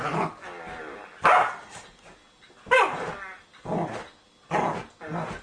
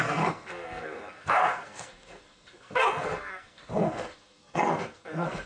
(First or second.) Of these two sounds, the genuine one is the first